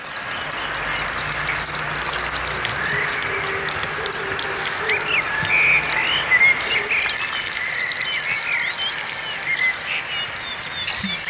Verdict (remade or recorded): recorded